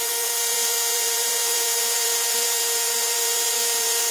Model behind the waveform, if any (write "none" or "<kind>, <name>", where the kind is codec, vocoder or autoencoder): vocoder, Vocos